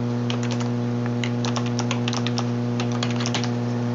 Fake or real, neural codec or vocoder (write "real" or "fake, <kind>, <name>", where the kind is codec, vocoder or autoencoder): fake, vocoder, BigVGAN v2